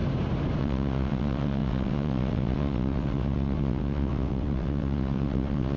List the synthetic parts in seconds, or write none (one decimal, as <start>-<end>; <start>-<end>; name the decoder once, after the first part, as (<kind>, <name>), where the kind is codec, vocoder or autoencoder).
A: 0.6-5.8 (vocoder, WaveNeXt)